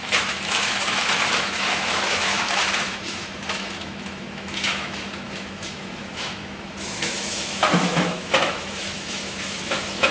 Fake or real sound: fake